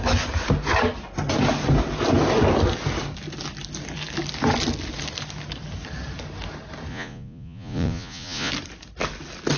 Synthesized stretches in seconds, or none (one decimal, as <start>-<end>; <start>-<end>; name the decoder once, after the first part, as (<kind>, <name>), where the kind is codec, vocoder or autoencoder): 6.9-8.5 (vocoder, Vocos)

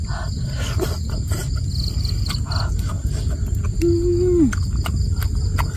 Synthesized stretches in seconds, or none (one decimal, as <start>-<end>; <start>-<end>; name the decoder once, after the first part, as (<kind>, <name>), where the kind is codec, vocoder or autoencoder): none

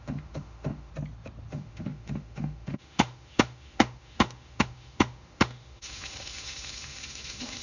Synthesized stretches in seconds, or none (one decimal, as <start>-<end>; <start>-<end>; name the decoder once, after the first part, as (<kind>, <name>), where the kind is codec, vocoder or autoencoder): 0.0-0.9 (autoencoder, DAC-VAE); 1.5-7.6